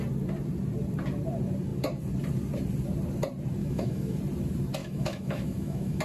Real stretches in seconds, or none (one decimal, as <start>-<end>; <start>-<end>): 0.0-3.6; 4.2-4.8